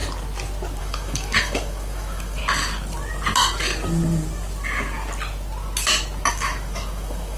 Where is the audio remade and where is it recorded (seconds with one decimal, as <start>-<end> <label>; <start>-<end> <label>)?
0.0-0.8 recorded; 0.8-2.4 remade; 2.4-6.3 recorded; 6.3-7.4 remade